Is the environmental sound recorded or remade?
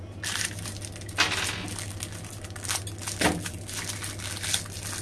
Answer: recorded